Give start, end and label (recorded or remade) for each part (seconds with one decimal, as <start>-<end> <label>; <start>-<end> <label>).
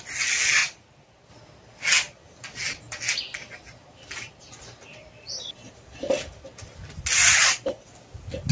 0.0-8.5 recorded